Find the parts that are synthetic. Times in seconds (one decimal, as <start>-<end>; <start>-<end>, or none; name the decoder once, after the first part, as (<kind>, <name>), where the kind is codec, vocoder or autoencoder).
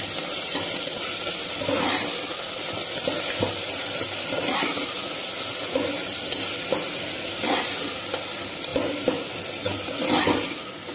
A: none